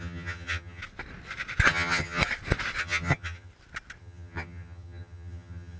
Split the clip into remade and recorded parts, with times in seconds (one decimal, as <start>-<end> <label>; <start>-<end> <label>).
0.0-0.8 remade; 0.8-1.7 recorded; 1.7-2.2 remade; 2.2-2.8 recorded; 2.8-3.5 remade; 3.5-4.0 recorded; 4.0-5.8 remade